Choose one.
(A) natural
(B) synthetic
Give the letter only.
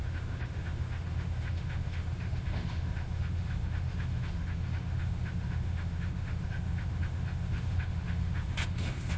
B